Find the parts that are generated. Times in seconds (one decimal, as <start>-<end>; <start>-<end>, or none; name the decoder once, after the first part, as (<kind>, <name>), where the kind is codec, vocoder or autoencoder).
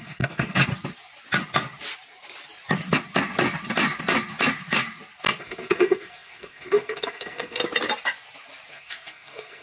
0.0-0.6 (codec, SNAC); 5.4-7.6; 8.7-9.6